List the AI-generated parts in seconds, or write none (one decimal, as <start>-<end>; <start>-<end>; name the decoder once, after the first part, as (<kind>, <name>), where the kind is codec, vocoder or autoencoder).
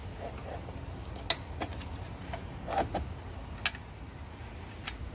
none